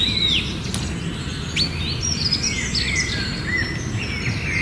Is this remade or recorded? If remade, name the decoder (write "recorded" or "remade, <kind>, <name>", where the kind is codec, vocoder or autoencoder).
recorded